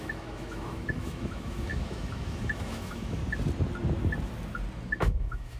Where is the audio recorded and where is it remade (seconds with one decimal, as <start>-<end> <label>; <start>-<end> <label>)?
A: 0.0-3.2 remade; 3.2-5.0 recorded; 5.0-5.6 remade